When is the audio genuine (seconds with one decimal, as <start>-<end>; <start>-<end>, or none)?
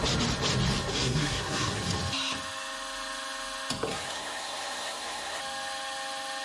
0.0-0.9; 1.8-3.9; 5.4-6.4